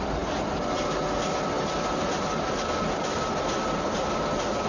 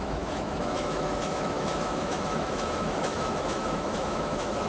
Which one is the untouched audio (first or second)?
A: first